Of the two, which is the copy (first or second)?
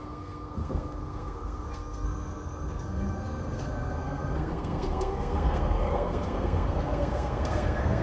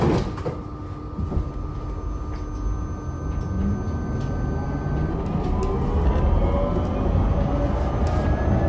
first